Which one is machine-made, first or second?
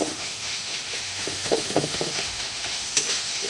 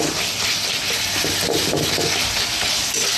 first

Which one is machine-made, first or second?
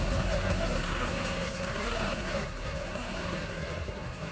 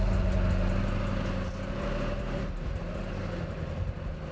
first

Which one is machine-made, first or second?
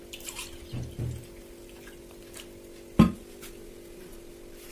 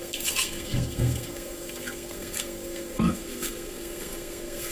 second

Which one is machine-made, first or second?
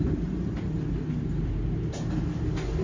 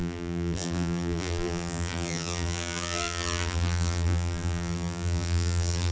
second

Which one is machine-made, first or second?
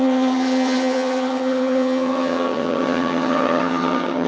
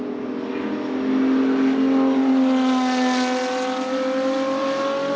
first